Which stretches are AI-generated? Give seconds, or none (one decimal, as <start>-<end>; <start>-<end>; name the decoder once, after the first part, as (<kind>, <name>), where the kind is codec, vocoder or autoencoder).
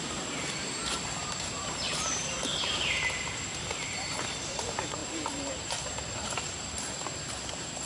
0.0-0.8 (vocoder, BigVGAN v2); 1.3-7.9